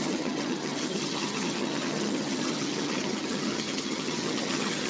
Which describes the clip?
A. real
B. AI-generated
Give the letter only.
B